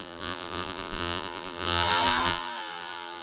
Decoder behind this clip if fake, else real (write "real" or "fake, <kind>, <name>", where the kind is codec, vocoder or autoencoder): fake, vocoder, BigVGAN v2